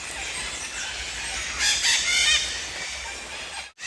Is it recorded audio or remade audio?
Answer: recorded